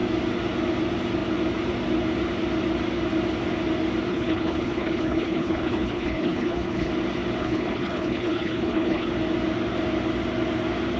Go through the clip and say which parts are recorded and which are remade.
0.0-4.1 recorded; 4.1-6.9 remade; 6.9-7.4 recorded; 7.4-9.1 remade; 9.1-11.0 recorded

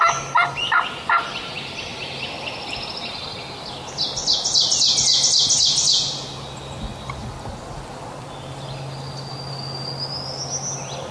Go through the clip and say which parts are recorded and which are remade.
0.0-11.1 recorded

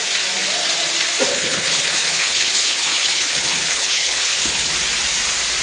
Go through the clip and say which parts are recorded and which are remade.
0.0-1.3 recorded; 1.3-4.7 remade; 4.7-5.6 recorded

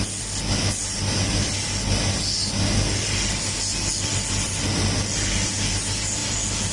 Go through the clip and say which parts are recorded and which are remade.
0.0-6.7 recorded

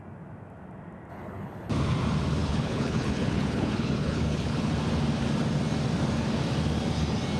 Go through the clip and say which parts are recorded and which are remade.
0.0-1.1 recorded; 1.1-1.7 remade; 1.7-2.4 recorded; 2.4-4.7 remade; 4.7-7.4 recorded

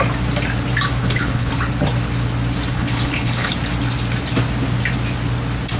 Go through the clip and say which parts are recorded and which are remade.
0.0-1.0 recorded; 1.0-1.5 remade; 1.5-2.7 recorded; 2.7-3.5 remade; 3.5-5.8 recorded